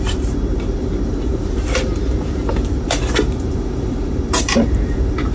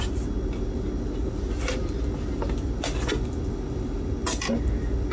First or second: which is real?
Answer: second